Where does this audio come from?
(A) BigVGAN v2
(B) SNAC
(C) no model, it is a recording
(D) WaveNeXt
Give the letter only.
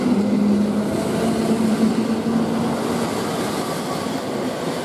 C